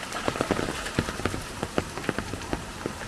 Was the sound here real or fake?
real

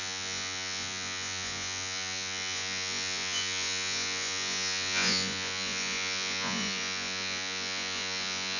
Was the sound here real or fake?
fake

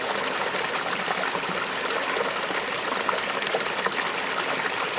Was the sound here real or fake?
real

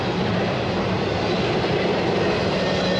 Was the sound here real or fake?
real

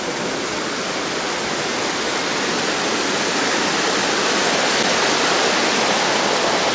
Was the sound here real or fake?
real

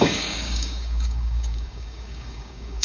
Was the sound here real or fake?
fake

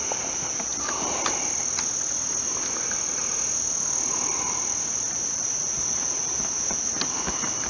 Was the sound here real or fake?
real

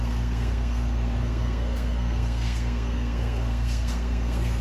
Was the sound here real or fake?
fake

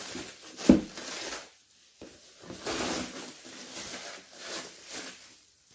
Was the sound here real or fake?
real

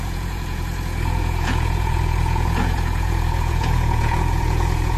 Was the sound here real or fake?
fake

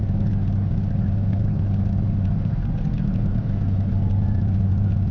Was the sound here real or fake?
real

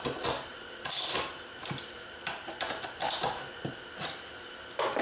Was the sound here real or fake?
real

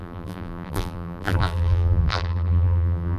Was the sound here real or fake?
fake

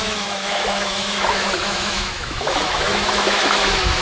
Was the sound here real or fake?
fake